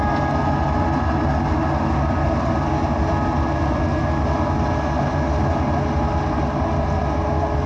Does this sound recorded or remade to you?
recorded